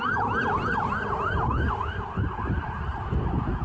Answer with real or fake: real